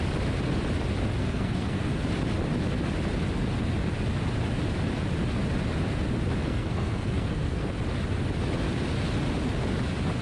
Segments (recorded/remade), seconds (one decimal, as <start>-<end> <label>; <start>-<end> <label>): 0.0-1.2 recorded; 1.2-1.9 remade; 1.9-6.4 recorded; 6.4-7.7 remade; 7.7-10.2 recorded